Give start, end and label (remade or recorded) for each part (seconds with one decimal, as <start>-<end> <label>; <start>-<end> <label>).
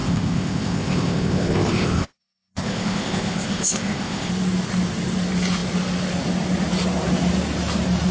0.0-4.3 remade; 4.3-8.1 recorded